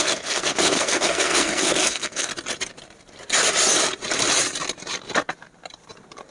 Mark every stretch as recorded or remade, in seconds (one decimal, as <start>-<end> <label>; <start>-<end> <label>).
0.0-2.3 remade; 2.3-6.3 recorded